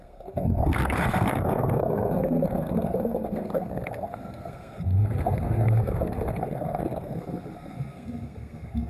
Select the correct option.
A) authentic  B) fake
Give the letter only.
B